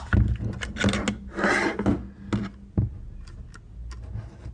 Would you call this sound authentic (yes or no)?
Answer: yes